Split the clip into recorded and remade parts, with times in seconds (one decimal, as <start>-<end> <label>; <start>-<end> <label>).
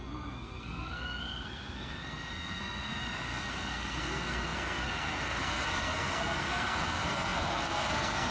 0.0-8.3 remade